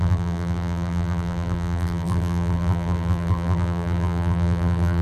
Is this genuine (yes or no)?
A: no